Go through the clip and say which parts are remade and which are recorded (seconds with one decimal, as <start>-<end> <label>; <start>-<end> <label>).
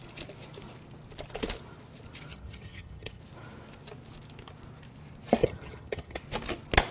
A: 0.0-2.3 recorded; 2.3-3.2 remade; 3.2-5.4 recorded; 5.4-6.2 remade; 6.2-6.9 recorded